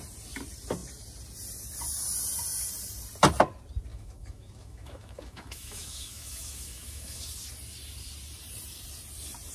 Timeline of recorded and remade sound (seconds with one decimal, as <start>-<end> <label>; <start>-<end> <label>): 0.0-3.9 recorded; 3.9-7.2 remade; 7.2-9.5 recorded